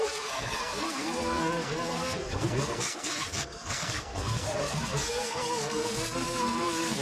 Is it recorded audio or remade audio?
remade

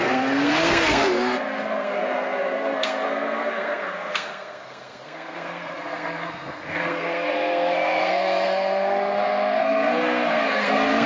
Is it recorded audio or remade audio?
remade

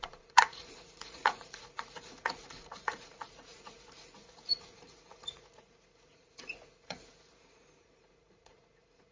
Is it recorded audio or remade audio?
remade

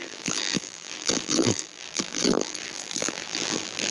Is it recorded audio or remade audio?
remade